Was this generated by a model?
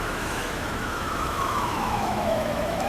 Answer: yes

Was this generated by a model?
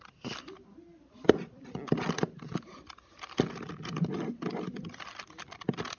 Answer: no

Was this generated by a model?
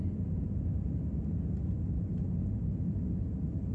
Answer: no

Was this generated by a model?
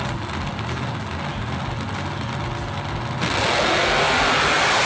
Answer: no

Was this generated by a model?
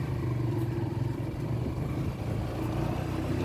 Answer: no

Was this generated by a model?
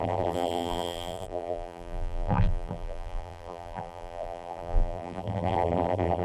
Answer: yes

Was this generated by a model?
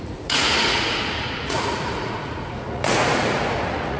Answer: yes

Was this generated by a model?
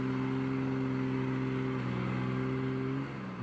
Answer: no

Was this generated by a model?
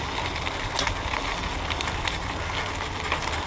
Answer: no